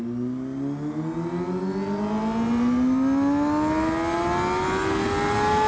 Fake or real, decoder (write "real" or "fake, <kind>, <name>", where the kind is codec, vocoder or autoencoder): real